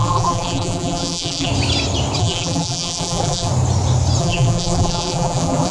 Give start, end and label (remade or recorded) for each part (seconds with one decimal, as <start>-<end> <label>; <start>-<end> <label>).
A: 0.0-1.5 remade; 1.5-2.2 recorded; 2.2-3.5 remade; 3.5-4.2 recorded; 4.2-5.7 remade